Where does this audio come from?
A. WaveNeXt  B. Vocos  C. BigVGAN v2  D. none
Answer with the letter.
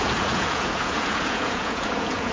B